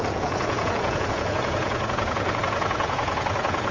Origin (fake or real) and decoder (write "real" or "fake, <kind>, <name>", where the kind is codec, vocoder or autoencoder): fake, vocoder, Vocos